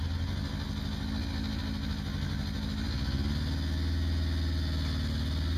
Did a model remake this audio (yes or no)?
no